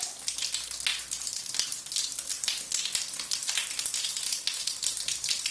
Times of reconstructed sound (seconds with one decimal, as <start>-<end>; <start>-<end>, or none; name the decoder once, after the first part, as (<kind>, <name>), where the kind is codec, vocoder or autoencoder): 0.9-1.5 (vocoder, BigVGAN v2); 2.3-5.5